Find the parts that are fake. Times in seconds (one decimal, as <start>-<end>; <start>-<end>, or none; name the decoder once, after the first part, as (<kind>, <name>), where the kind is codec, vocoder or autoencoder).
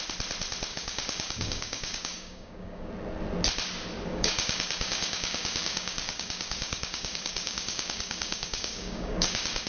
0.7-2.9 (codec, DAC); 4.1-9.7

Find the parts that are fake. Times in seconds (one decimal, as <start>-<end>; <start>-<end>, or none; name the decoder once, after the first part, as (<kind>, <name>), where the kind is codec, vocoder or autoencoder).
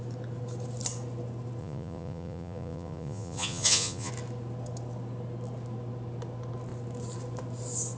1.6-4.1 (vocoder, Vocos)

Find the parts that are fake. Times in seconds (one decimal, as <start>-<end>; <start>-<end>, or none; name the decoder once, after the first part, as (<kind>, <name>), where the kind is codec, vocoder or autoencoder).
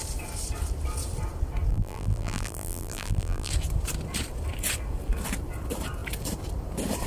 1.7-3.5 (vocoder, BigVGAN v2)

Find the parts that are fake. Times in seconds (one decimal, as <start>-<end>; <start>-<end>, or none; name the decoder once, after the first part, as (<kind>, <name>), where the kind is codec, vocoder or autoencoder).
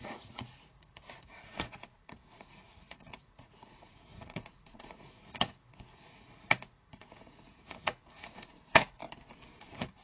0.0-9.0 (vocoder, Vocos); 9.6-10.0